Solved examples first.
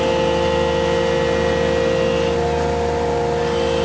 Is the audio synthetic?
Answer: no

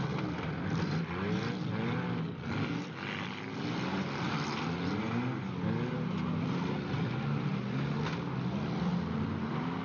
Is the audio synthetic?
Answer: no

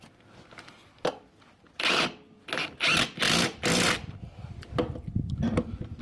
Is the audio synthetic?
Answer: no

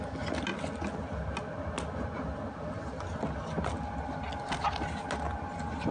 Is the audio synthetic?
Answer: no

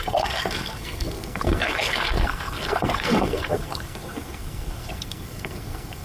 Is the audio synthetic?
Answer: yes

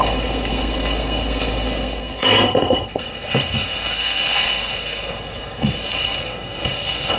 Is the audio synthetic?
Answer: yes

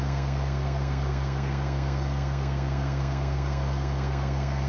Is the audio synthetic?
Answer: yes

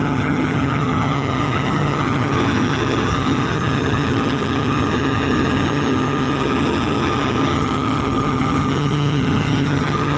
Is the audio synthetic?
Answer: yes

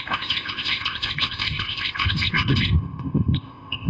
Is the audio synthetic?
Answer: yes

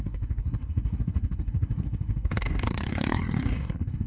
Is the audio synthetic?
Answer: yes